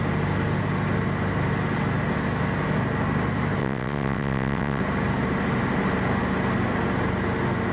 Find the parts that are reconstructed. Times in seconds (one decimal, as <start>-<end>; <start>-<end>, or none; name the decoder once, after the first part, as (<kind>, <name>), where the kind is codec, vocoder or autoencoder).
3.6-4.8 (vocoder, WaveNeXt)